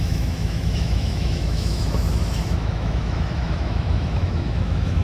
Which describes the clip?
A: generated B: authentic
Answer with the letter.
A